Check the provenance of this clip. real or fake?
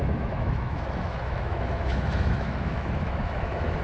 fake